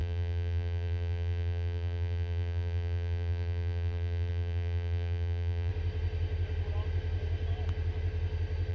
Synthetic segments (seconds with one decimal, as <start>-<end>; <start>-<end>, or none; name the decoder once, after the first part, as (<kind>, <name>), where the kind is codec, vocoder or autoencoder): 0.0-5.7 (vocoder, BigVGAN v2)